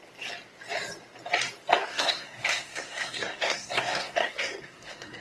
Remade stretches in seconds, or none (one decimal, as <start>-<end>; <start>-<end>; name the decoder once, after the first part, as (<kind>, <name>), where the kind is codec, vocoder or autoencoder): 1.8-5.2 (codec, SNAC)